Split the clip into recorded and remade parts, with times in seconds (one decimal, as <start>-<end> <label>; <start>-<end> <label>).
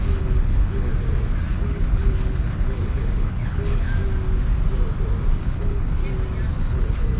0.0-0.9 remade; 0.9-1.5 recorded; 1.5-3.9 remade; 3.9-5.4 recorded; 5.4-6.0 remade; 6.0-6.5 recorded; 6.5-7.2 remade